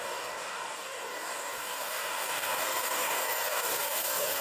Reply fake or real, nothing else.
fake